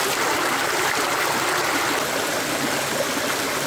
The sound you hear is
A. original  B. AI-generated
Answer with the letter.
A